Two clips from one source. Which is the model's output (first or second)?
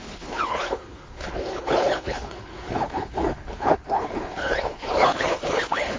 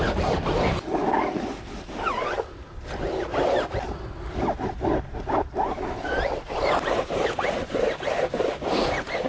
first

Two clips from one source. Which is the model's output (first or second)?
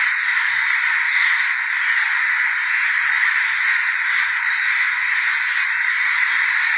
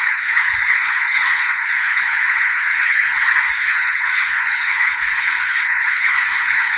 second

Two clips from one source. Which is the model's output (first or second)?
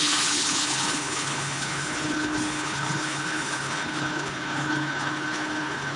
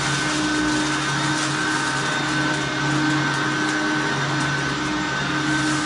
first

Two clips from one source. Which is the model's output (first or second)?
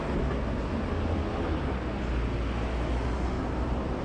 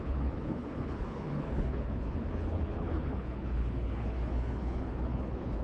second